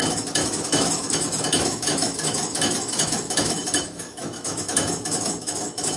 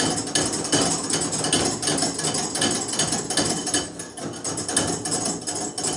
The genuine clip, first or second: second